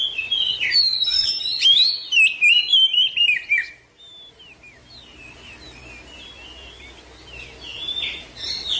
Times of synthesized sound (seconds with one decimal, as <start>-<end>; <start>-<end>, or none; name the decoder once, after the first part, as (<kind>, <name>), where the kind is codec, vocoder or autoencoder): 0.9-1.9 (vocoder, BigVGAN v2); 7.7-8.8